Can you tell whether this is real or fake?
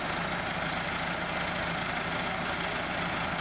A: real